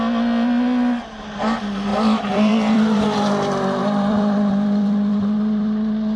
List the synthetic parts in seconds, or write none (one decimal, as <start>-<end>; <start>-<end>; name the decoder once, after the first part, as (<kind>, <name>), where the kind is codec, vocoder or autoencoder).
1.9-3.0 (vocoder, BigVGAN v2); 3.8-6.2